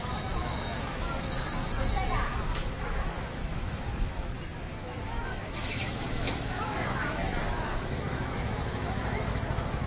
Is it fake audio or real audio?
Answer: fake